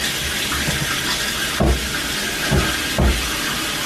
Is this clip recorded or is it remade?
recorded